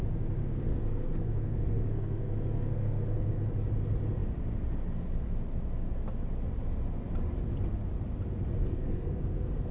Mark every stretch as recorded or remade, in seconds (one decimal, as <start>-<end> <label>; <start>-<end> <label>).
0.0-0.4 recorded; 0.4-3.3 remade; 3.3-8.6 recorded; 8.6-9.7 remade